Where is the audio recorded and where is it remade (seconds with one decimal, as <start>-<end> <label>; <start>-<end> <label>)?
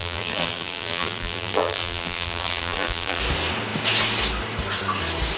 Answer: 0.0-3.2 remade; 3.2-5.4 recorded